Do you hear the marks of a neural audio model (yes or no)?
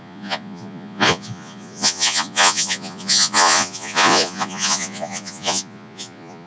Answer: yes